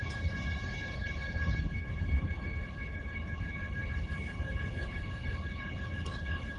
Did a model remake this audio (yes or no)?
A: yes